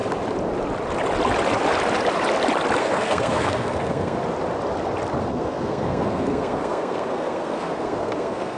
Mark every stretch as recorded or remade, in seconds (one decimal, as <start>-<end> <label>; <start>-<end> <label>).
0.0-2.8 recorded; 2.8-4.2 remade; 4.2-5.2 recorded; 5.2-8.6 remade